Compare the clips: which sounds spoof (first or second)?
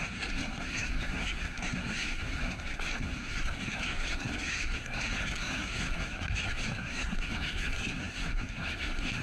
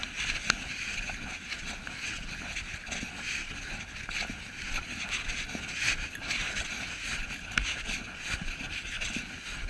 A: first